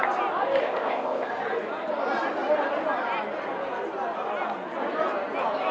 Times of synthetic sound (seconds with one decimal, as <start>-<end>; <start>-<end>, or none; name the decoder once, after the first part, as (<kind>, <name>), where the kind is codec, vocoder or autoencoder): 0.6-1.3 (codec, ZipCodec)